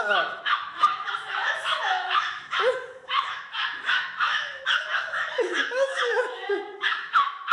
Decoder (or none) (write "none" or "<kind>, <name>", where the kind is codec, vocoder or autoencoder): autoencoder, DAC-VAE